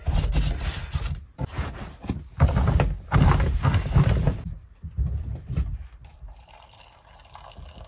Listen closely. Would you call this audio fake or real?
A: real